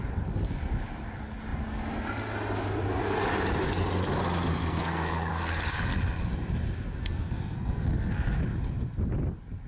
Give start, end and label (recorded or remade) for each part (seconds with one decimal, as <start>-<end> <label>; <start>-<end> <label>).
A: 0.0-4.6 recorded; 4.6-5.3 remade; 5.3-7.0 recorded; 7.0-8.4 remade; 8.4-9.7 recorded

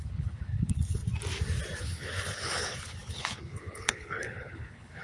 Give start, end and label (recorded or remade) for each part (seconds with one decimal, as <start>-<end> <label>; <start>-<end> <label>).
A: 0.0-1.0 remade; 1.0-1.8 recorded; 1.8-5.0 remade

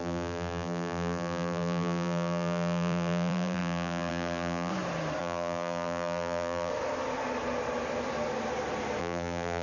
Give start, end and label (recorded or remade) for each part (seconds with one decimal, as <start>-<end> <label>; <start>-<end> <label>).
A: 0.0-4.7 remade; 4.7-5.2 recorded; 5.2-6.7 remade; 6.7-9.0 recorded; 9.0-9.6 remade

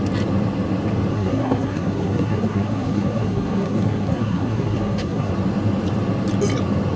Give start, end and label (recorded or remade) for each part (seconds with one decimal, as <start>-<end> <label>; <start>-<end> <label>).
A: 0.0-1.1 recorded; 1.1-5.3 remade; 5.3-7.0 recorded